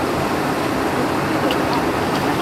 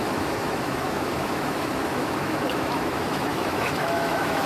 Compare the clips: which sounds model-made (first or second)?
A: second